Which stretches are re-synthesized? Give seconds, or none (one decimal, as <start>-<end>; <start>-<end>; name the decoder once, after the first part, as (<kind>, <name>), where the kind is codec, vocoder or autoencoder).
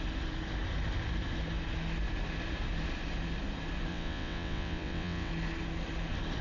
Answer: 3.9-5.3 (vocoder, WaveNeXt)